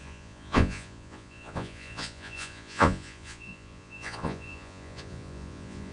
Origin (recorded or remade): remade